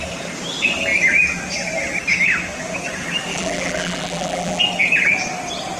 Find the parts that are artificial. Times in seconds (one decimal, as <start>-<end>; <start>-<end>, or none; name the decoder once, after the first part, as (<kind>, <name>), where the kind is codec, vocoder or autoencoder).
3.3-4.6 (vocoder, BigVGAN v2)